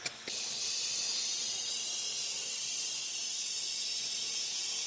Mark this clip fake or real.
real